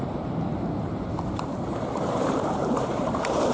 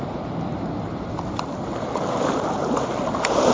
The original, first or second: second